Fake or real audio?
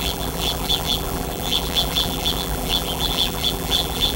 fake